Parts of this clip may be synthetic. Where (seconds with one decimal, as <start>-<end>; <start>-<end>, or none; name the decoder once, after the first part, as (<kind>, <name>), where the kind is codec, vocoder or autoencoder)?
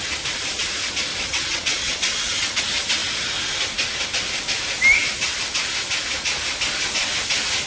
1.1-2.6 (vocoder, WaveNeXt)